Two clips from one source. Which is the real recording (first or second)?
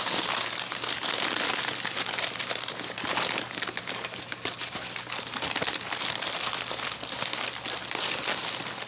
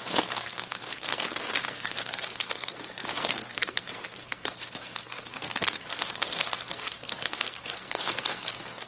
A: first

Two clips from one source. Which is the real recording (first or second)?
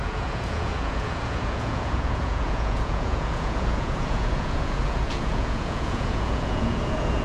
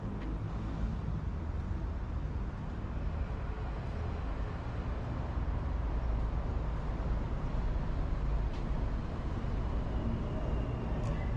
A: second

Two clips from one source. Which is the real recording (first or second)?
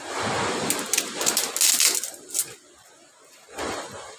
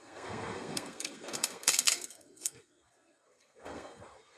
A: first